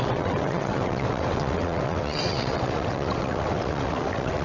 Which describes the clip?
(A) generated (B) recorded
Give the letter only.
A